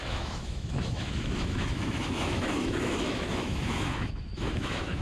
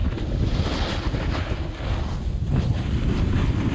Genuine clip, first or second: second